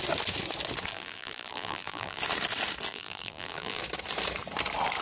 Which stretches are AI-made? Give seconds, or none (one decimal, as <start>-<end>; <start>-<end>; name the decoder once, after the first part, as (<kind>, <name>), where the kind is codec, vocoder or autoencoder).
0.9-2.2 (vocoder, BigVGAN v2); 2.9-3.8